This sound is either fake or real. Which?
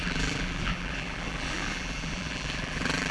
fake